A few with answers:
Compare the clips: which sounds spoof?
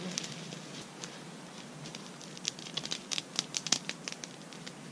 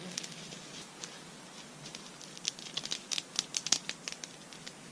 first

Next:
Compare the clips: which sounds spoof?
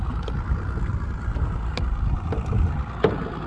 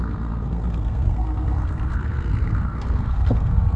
second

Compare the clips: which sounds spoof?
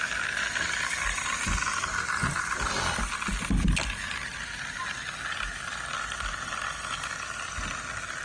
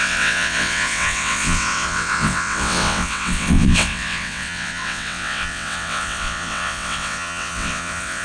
second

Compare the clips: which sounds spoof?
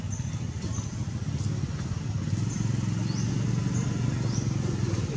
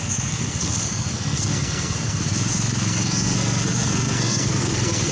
second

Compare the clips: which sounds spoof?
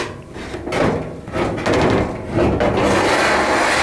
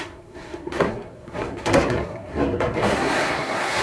second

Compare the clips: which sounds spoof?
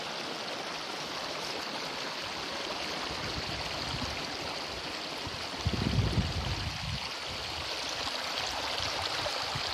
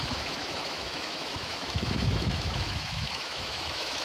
second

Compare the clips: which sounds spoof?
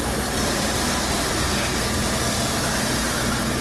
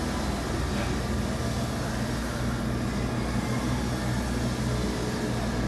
first